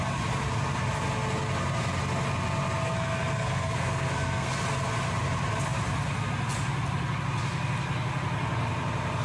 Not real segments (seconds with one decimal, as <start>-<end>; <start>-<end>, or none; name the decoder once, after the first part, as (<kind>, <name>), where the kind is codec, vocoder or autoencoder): 2.8-4.5 (codec, SNAC)